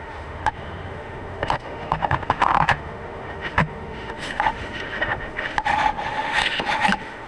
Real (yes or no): no